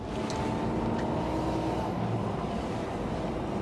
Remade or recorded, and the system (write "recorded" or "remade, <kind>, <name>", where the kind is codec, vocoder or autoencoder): recorded